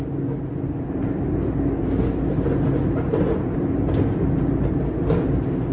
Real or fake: real